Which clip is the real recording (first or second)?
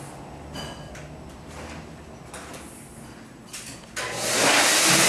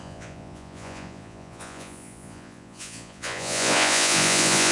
first